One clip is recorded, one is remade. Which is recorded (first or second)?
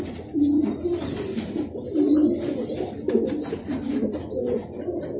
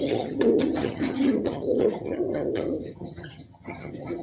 first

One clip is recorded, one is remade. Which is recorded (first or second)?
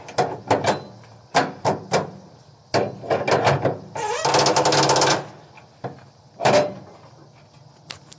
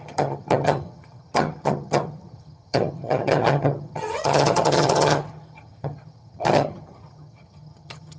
first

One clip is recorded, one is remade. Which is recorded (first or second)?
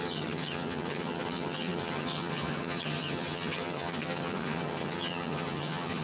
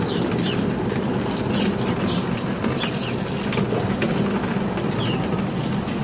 second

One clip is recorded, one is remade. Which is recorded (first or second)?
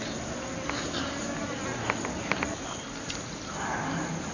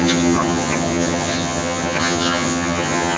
first